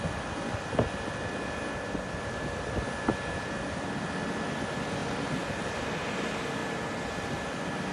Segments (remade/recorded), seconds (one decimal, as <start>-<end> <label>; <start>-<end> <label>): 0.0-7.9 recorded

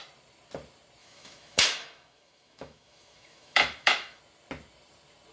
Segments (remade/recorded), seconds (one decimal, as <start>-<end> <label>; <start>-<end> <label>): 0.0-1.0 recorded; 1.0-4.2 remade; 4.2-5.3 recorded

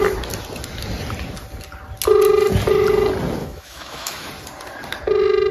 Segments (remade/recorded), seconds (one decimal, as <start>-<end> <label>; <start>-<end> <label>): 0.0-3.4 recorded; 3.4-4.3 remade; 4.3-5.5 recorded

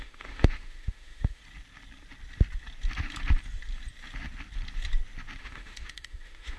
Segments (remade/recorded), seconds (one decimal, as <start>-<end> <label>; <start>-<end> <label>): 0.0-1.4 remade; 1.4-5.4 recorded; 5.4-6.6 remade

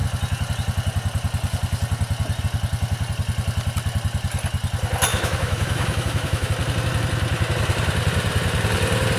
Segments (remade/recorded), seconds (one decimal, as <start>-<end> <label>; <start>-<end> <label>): 0.0-5.1 recorded; 5.1-6.5 remade; 6.5-9.2 recorded

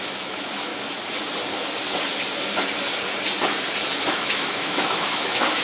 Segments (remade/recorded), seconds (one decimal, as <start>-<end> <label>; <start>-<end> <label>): 0.0-0.7 remade; 0.7-4.1 recorded; 4.1-5.6 remade